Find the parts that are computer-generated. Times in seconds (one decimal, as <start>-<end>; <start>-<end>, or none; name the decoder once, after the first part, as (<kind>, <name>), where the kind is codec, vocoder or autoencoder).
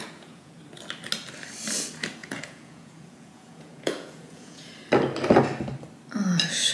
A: 0.0-0.6 (vocoder, Vocos); 2.2-4.7